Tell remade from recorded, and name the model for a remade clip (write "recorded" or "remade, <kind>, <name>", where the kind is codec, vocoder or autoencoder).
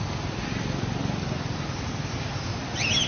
recorded